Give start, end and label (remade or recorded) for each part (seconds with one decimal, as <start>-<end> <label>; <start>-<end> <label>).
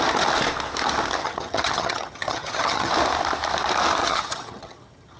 0.0-1.2 recorded; 1.2-2.9 remade; 2.9-4.0 recorded; 4.0-5.2 remade